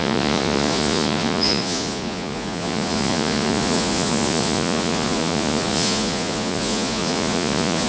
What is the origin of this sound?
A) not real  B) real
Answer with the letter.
A